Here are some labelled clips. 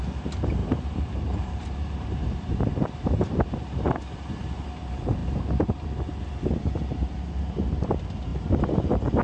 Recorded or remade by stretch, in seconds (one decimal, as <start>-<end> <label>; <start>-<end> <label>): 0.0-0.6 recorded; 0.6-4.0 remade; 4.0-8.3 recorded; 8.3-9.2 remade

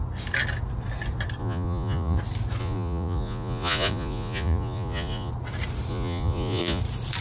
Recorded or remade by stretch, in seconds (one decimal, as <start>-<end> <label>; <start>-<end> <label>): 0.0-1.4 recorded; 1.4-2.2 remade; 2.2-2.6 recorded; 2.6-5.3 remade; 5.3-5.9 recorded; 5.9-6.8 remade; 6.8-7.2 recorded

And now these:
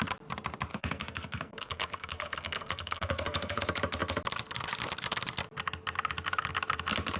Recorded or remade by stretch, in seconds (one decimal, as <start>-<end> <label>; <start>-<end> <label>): 0.0-0.7 recorded; 0.7-3.6 remade; 3.6-7.2 recorded